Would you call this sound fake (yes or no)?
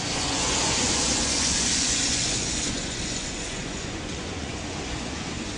yes